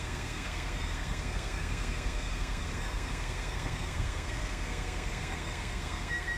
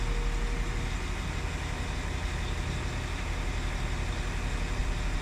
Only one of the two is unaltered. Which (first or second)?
second